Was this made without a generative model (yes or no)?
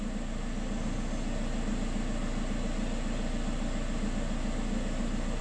yes